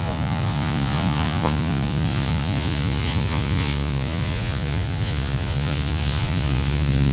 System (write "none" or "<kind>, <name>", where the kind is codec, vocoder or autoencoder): vocoder, Vocos